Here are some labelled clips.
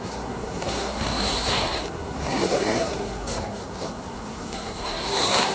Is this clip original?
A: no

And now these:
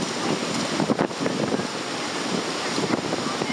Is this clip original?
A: yes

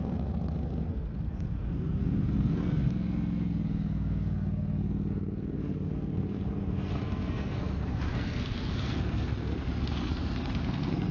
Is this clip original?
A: no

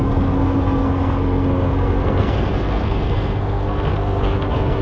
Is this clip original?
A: no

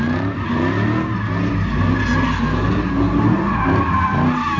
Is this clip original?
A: yes